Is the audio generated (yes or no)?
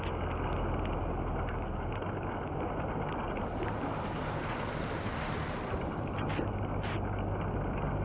no